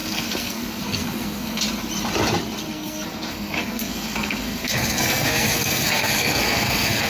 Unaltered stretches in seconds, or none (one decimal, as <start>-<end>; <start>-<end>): 1.6-2.6